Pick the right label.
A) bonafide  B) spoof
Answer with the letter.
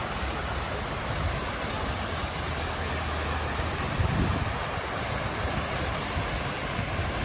B